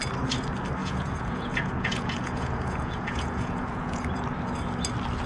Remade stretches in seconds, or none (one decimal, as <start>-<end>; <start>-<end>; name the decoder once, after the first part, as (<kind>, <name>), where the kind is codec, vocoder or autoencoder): 0.8-4.0 (vocoder, Vocos)